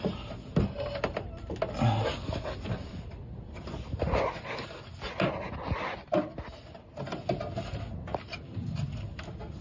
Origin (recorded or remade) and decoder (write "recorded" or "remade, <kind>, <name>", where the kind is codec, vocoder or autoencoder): recorded